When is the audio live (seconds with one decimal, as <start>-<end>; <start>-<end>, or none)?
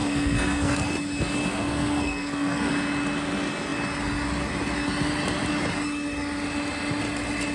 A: 0.9-1.5; 2.7-7.5